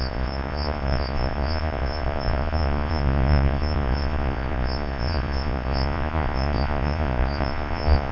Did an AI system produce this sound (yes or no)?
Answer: yes